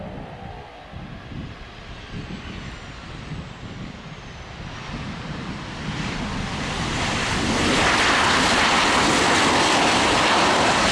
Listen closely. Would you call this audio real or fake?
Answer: real